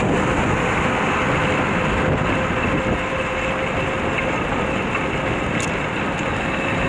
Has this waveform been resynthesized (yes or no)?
no